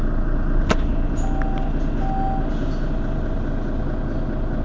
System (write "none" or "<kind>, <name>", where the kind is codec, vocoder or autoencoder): none